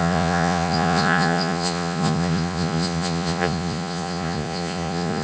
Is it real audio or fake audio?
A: fake